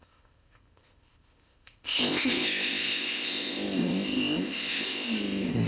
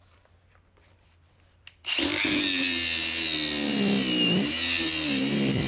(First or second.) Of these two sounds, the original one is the second